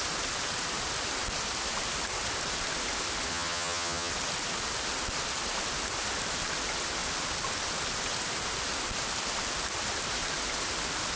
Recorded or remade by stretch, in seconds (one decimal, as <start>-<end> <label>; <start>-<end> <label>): 0.0-3.3 recorded; 3.3-4.1 remade; 4.1-11.2 recorded